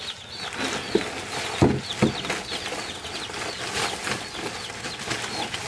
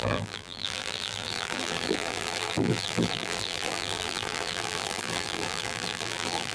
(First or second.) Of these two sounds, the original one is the first